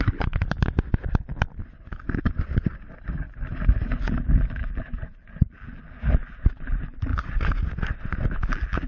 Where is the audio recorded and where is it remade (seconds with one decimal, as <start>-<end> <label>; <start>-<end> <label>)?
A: 0.0-0.4 remade; 0.4-3.1 recorded; 3.1-7.1 remade; 7.1-8.3 recorded; 8.3-8.9 remade